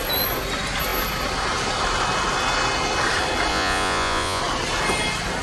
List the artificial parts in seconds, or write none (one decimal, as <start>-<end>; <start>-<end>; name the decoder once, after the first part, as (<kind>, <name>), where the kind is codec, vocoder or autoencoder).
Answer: 3.5-4.4 (vocoder, Vocos)